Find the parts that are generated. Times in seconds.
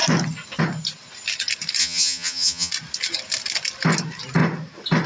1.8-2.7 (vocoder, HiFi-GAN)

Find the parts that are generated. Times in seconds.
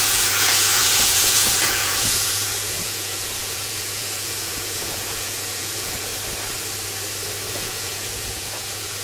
0.0-6.1 (vocoder, Vocos); 7.5-9.0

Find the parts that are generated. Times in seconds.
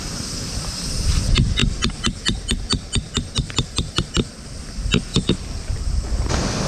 1.6-4.6 (vocoder, BigVGAN v2)